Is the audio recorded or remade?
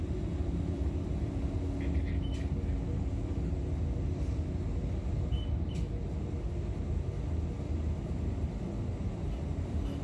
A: recorded